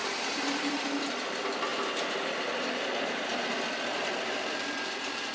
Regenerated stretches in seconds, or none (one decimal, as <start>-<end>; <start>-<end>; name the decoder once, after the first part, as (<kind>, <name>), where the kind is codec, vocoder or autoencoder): none